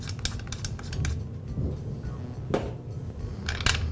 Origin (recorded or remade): recorded